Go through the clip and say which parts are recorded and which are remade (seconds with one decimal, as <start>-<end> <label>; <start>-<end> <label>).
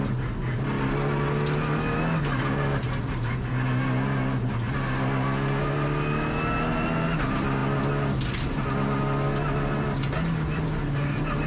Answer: 0.0-11.5 recorded